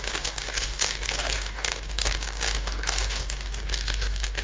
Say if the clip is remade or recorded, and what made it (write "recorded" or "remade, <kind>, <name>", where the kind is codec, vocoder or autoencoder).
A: remade, codec, DAC